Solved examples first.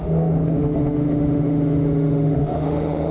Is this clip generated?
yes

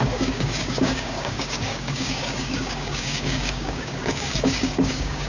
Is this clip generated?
yes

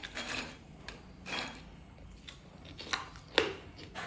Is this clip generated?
no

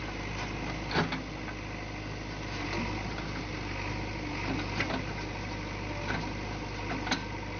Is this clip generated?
no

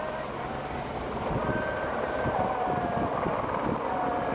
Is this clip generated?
no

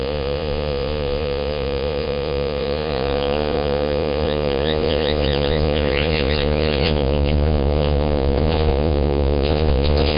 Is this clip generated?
yes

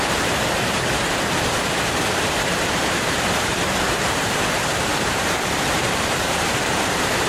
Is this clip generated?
yes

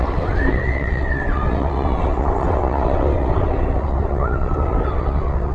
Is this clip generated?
yes